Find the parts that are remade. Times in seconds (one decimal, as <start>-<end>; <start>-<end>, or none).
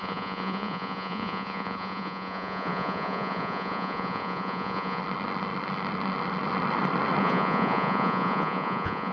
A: 0.0-5.0; 7.2-9.1